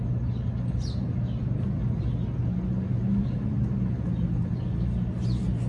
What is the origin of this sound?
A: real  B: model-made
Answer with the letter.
A